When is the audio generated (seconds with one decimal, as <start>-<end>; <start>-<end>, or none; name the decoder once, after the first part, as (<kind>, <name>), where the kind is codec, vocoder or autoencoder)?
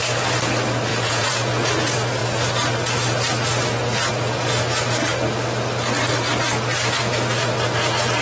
0.9-1.5 (vocoder, Vocos)